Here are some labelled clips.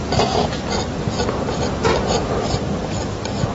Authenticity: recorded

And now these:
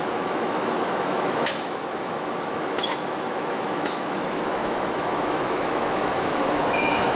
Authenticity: remade